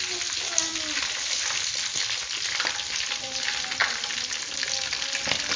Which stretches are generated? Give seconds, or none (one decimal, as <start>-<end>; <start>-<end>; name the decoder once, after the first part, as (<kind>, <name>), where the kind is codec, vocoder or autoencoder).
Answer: none